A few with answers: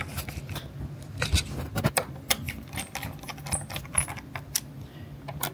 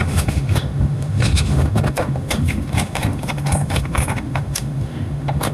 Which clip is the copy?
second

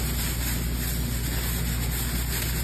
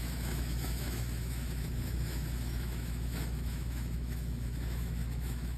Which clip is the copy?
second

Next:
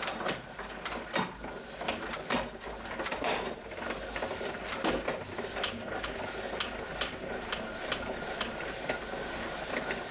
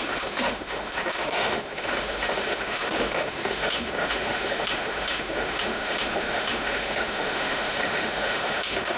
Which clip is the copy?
second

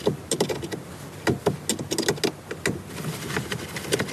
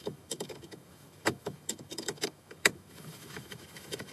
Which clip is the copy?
second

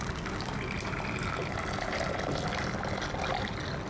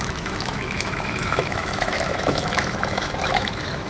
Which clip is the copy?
second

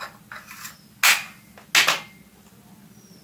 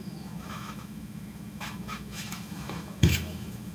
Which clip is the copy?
second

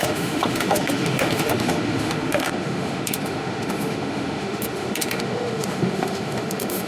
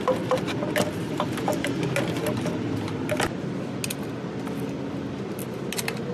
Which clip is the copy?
first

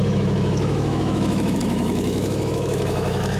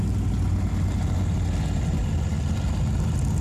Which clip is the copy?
first